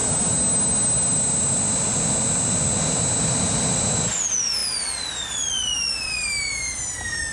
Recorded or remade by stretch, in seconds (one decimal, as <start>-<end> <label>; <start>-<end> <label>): 0.0-7.3 recorded